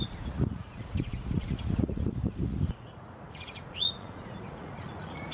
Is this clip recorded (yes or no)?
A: no